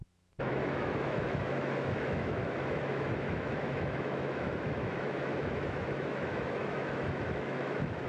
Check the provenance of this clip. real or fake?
fake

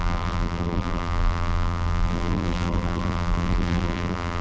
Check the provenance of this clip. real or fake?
fake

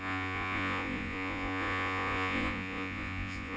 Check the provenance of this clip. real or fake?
fake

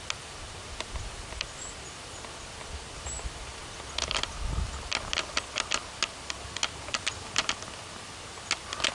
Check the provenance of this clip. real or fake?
real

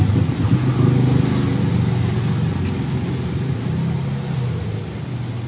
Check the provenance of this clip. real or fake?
real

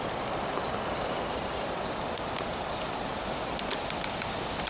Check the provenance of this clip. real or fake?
fake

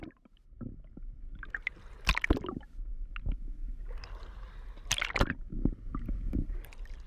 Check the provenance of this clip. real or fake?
real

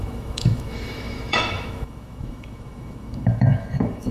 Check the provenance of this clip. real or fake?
fake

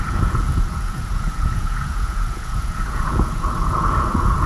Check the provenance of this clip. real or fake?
fake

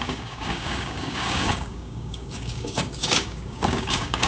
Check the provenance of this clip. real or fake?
fake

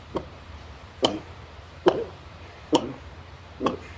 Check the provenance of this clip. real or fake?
fake